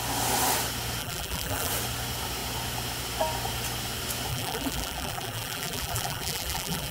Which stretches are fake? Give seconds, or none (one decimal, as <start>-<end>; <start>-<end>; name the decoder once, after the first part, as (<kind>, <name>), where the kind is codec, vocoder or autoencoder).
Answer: 1.0-1.7 (vocoder, BigVGAN v2); 4.3-6.9